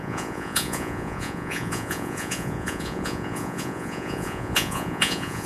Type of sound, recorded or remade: remade